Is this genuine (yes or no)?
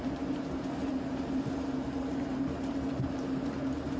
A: no